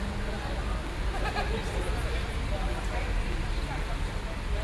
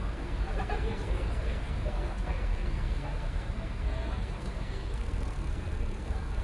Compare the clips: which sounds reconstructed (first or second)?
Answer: second